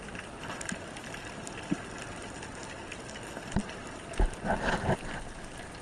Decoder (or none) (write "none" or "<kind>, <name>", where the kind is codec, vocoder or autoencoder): none